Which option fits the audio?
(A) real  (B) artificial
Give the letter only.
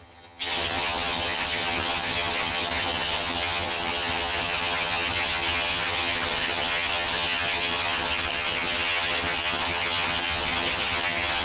B